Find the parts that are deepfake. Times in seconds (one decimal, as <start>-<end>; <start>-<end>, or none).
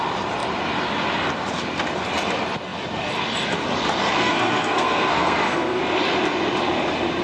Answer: 4.2-5.8